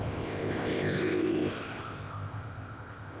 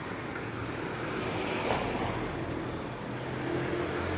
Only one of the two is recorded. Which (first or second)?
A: second